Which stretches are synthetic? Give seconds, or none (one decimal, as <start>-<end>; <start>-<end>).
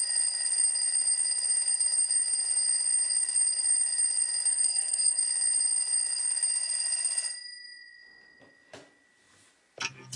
4.5-5.2